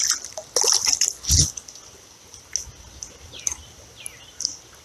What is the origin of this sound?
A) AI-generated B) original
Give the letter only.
B